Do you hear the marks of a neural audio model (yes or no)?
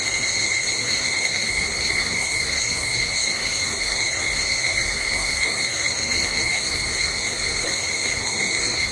yes